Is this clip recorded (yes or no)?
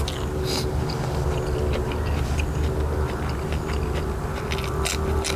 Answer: yes